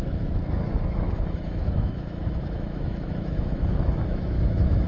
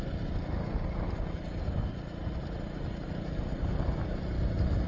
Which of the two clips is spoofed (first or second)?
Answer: first